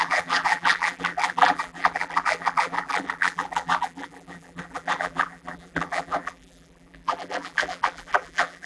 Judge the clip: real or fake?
fake